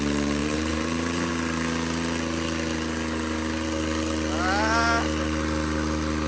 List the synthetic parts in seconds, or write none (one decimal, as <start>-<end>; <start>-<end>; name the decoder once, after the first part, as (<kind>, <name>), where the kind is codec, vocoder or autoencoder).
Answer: 0.4-1.3 (vocoder, BigVGAN v2)